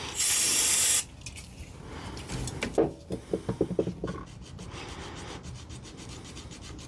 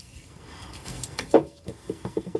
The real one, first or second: first